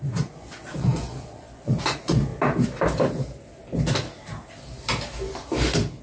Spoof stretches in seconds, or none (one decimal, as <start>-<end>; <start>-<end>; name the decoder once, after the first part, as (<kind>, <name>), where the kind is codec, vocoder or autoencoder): 0.0-2.3 (vocoder, Vocos)